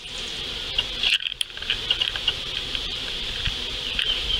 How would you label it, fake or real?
fake